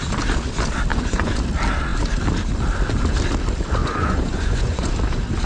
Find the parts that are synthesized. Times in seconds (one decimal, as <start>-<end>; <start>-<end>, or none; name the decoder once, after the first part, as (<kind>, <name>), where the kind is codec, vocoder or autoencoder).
0.9-1.4 (vocoder, Vocos); 3.8-4.9